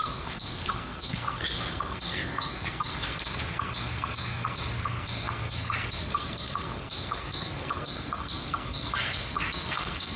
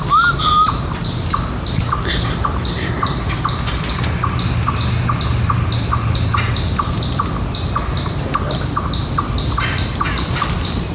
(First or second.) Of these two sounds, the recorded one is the second